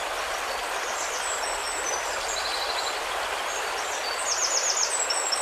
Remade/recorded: recorded